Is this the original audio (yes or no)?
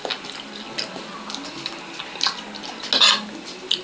yes